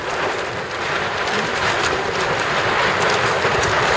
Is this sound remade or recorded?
recorded